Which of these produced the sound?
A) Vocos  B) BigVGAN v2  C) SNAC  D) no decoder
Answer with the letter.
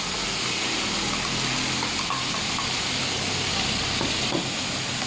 D